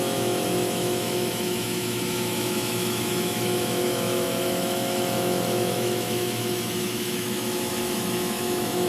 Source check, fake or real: fake